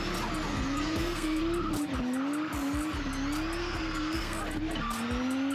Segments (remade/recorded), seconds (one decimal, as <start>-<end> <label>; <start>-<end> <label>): 0.0-0.5 recorded; 0.5-1.4 remade; 1.4-3.6 recorded; 3.6-4.4 remade; 4.4-5.5 recorded